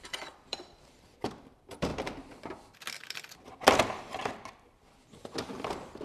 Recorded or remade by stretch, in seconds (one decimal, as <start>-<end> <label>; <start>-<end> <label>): 0.0-1.9 remade; 1.9-5.5 recorded; 5.5-6.0 remade